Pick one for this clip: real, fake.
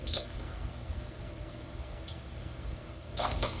fake